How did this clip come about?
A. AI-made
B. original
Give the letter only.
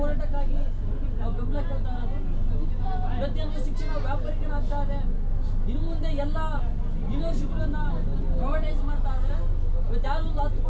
B